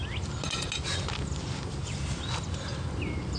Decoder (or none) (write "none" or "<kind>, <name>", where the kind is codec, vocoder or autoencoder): none